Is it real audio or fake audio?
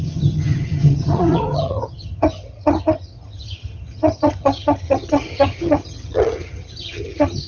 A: fake